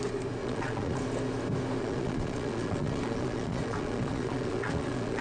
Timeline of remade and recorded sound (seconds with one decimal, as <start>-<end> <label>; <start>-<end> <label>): 0.0-0.4 recorded; 0.4-1.0 remade; 1.0-1.8 recorded; 1.8-5.2 remade